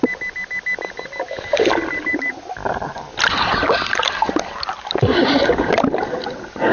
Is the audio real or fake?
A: real